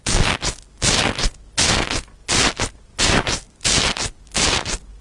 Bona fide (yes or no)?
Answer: yes